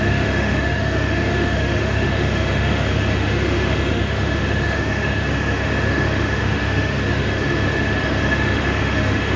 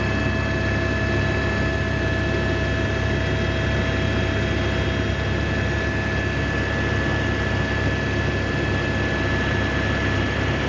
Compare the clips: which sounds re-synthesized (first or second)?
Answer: first